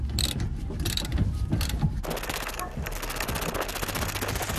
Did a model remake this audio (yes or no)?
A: no